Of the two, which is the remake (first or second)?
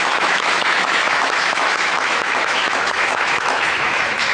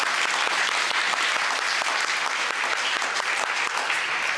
first